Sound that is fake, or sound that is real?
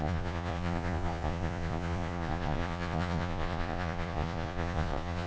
fake